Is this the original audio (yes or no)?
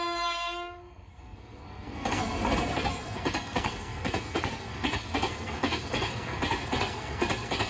no